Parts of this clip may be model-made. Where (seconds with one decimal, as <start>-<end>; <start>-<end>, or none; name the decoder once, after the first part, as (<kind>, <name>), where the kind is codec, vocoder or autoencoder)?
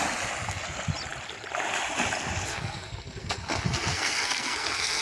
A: 2.5-5.0 (codec, SNAC)